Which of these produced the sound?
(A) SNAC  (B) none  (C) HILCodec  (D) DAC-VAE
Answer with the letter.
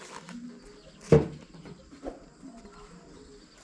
B